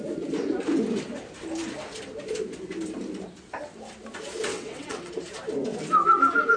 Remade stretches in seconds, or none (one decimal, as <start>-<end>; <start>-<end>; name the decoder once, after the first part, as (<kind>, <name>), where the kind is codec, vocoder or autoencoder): 4.5-5.1 (vocoder, WaveNeXt)